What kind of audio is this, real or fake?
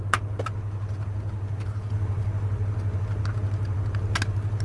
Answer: real